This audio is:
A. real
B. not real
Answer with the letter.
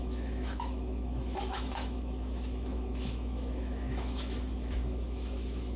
B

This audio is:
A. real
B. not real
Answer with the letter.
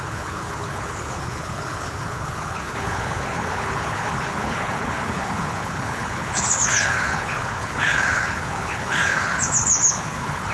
B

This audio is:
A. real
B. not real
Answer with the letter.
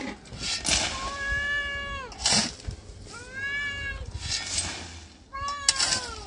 A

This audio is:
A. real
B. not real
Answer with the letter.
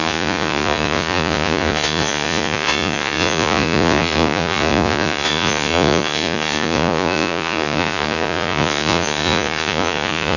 B